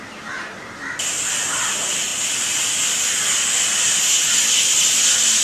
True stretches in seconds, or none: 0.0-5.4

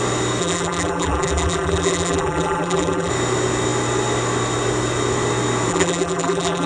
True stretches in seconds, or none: 0.0-0.4; 3.1-5.7